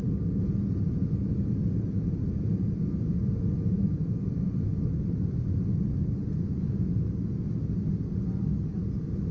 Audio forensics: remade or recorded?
recorded